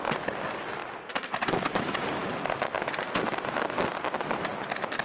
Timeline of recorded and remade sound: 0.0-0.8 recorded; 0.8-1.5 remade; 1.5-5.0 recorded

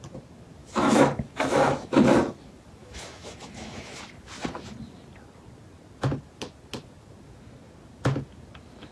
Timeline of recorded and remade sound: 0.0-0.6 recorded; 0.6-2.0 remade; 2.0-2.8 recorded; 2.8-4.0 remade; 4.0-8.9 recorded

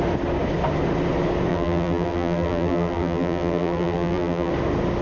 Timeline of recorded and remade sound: 0.0-1.5 recorded; 1.5-4.5 remade; 4.5-5.0 recorded

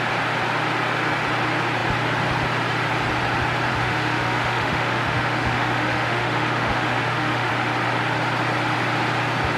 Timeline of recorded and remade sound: 0.0-3.7 recorded; 3.7-7.5 remade; 7.5-9.6 recorded